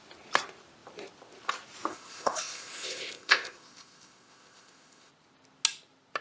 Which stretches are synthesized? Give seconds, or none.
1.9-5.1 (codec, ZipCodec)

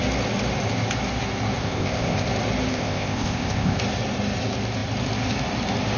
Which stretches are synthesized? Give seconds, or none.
1.6-2.3 (codec, ZipCodec); 2.7-3.8

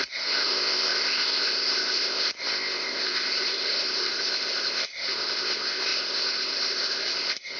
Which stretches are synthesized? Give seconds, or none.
0.0-7.6 (codec, ZipCodec)

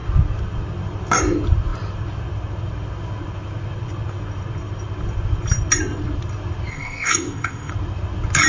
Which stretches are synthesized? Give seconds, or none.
6.7-7.7 (codec, ZipCodec)

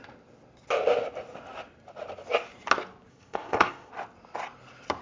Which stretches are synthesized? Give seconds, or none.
3.1-3.9 (codec, ZipCodec)